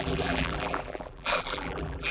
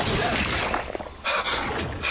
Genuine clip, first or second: second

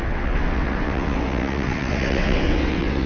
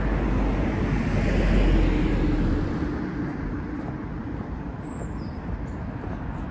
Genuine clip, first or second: second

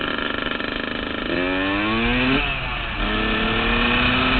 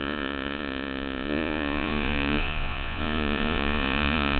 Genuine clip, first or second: first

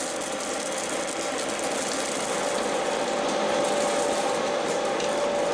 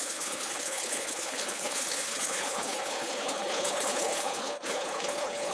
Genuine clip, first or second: first